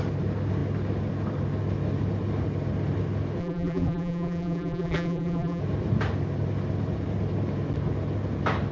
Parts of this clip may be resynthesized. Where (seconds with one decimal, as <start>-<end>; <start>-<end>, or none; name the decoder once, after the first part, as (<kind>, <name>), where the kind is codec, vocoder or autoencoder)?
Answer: 3.4-5.6 (vocoder, BigVGAN v2)